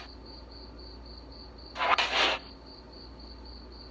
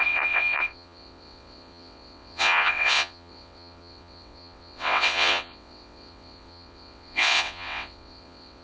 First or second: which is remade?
second